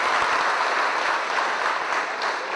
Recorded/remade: recorded